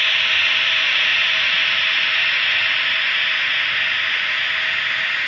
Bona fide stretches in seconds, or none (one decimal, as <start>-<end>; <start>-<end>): 0.0-5.3